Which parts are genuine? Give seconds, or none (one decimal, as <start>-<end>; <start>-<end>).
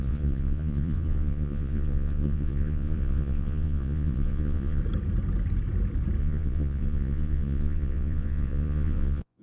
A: 4.8-6.2